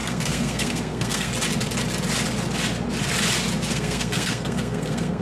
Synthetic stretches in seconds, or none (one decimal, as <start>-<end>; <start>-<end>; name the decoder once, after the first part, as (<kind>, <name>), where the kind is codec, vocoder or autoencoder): 0.0-1.3 (codec, SNAC); 3.7-5.2